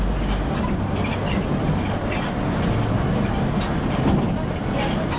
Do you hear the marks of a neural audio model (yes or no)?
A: no